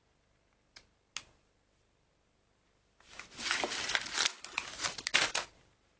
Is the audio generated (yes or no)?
no